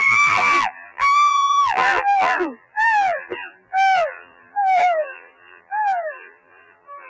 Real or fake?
fake